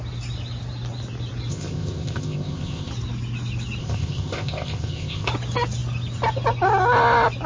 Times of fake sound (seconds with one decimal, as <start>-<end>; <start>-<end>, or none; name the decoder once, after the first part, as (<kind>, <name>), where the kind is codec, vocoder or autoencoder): 1.5-2.9 (codec, ZipCodec); 3.8-5.3